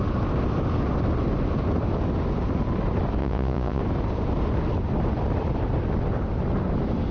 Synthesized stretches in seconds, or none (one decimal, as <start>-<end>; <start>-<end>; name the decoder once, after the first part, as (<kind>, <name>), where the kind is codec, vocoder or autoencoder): 3.2-3.8 (vocoder, Vocos)